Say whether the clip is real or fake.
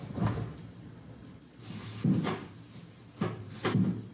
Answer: real